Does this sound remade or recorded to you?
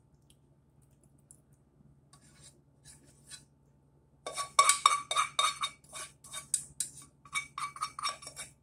recorded